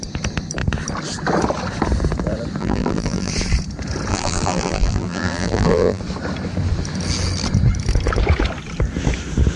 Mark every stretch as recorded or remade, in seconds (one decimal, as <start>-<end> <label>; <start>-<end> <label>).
0.0-2.6 recorded; 2.6-3.3 remade; 3.3-4.1 recorded; 4.1-6.0 remade; 6.0-9.6 recorded